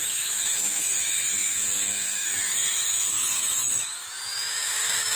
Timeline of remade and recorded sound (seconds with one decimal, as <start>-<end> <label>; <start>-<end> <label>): 0.0-5.2 remade